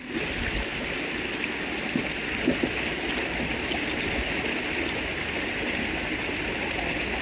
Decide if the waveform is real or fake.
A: real